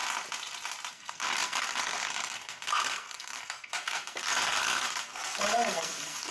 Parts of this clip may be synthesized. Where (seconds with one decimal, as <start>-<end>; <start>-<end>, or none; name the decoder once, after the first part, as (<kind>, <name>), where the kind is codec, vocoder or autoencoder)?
0.9-6.3 (codec, SNAC)